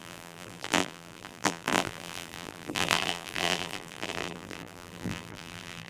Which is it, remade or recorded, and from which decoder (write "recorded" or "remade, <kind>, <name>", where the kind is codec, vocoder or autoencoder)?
remade, vocoder, BigVGAN v2